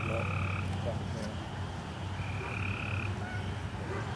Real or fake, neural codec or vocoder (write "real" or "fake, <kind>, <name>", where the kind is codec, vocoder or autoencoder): real